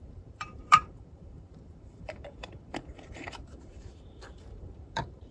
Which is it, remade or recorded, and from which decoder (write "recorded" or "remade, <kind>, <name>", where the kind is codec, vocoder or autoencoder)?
remade, vocoder, BigVGAN v2